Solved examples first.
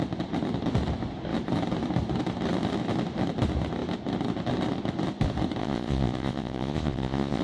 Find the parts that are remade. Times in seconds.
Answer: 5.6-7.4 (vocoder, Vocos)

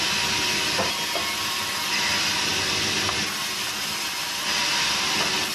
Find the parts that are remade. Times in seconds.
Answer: none

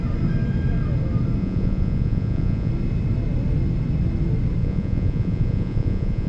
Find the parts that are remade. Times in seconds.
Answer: 1.4-2.7 (vocoder, Vocos); 4.6-6.3